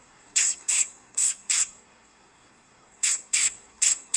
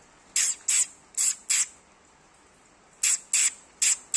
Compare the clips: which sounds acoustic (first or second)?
second